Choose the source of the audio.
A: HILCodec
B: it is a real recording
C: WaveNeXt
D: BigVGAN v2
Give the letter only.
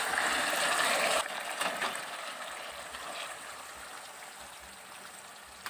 B